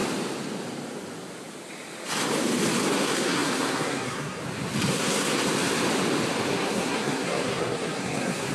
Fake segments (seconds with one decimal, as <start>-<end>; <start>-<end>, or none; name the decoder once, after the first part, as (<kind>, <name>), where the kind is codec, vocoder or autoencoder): 2.9-4.4 (codec, SNAC); 4.9-5.4; 6.5-8.5